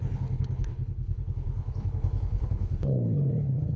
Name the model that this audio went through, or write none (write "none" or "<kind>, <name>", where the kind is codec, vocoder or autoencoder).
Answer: codec, HILCodec